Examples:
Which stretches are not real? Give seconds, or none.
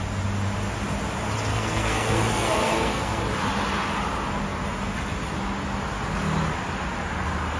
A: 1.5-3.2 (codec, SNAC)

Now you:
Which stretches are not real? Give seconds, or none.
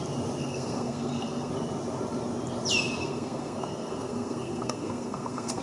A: 0.4-1.5 (codec, SNAC); 3.0-5.6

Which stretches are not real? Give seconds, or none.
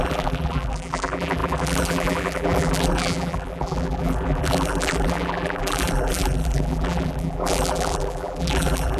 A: 0.0-9.0 (vocoder, BigVGAN v2)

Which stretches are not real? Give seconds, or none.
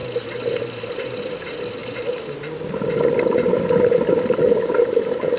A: 4.4-5.4 (codec, DAC)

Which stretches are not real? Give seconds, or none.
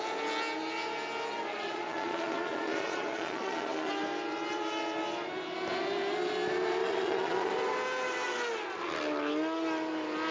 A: 1.5-3.9 (vocoder, Vocos); 6.8-7.5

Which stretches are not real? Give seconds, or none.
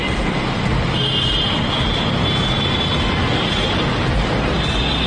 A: none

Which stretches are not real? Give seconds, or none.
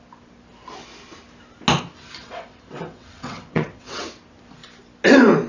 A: 2.2-4.0 (vocoder, WaveNeXt)